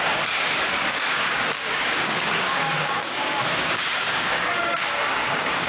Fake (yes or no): yes